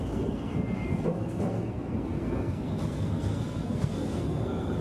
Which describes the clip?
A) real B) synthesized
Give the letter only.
B